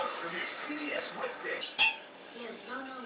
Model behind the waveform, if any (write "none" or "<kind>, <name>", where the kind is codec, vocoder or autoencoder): codec, DAC